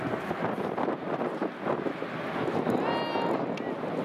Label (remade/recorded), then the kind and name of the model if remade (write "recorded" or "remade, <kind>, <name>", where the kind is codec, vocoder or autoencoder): recorded